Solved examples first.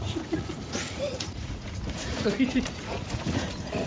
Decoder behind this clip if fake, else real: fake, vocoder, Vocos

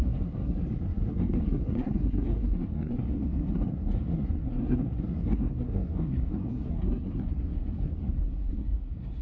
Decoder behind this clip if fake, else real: fake, codec, SNAC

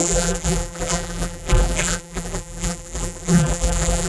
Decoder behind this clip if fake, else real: fake, vocoder, BigVGAN v2